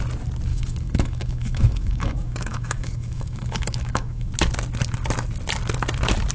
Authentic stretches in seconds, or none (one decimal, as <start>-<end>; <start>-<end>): 0.0-0.5; 4.3-6.3